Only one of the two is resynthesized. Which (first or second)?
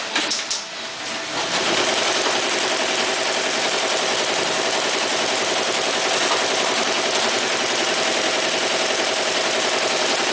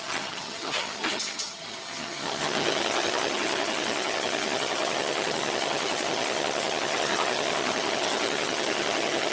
second